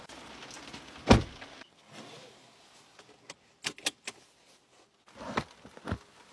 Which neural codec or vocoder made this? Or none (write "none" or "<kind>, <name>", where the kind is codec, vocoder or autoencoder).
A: none